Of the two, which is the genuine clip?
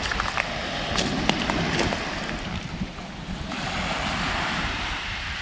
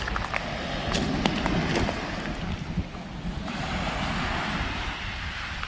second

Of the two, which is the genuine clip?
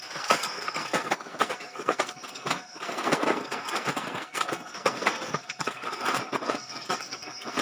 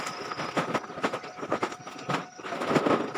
second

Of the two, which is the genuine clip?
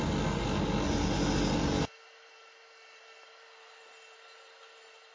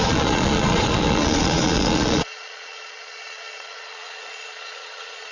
first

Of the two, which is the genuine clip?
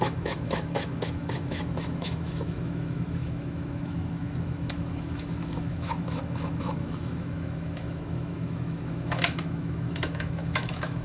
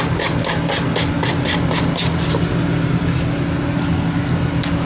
second